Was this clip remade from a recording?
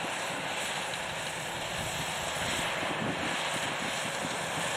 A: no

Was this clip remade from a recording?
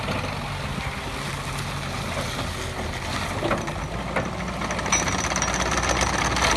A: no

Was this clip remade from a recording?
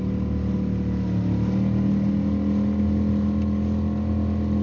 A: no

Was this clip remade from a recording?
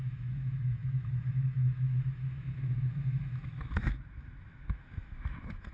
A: yes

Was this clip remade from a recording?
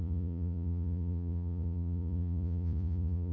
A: yes